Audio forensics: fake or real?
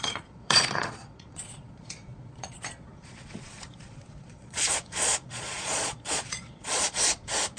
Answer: fake